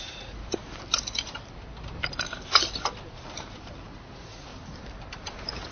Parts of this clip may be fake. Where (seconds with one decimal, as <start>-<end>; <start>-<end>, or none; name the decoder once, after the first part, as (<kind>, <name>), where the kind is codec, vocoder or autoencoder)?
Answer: 0.0-0.4 (vocoder, Vocos); 3.8-4.5